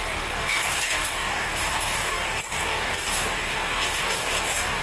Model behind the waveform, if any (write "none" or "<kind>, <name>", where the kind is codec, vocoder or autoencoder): codec, DAC